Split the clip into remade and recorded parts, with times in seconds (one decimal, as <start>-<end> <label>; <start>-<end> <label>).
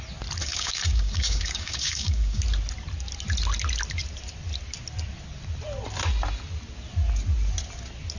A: 0.0-0.4 recorded; 0.4-2.4 remade; 2.4-8.2 recorded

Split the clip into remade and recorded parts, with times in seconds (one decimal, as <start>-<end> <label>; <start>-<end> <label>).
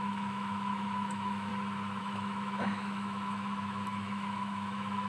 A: 0.0-1.5 remade; 1.5-2.0 recorded; 2.0-5.1 remade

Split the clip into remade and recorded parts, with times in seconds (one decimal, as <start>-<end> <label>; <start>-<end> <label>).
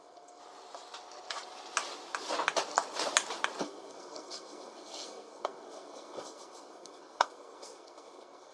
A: 0.0-0.4 remade; 0.4-3.6 recorded; 3.6-8.5 remade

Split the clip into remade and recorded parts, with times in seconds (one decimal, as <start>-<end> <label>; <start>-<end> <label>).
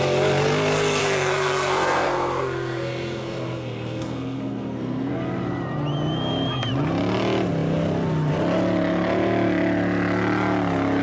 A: 0.0-1.0 recorded; 1.0-5.1 remade; 5.1-11.0 recorded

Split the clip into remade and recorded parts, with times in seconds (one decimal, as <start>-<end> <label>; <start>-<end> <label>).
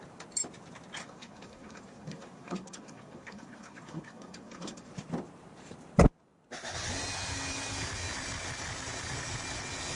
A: 0.0-1.0 recorded; 1.0-4.9 remade; 4.9-10.0 recorded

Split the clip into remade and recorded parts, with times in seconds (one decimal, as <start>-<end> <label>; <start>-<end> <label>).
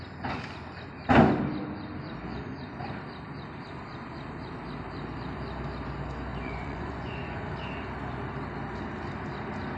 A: 0.0-6.3 recorded; 6.3-7.4 remade; 7.4-9.8 recorded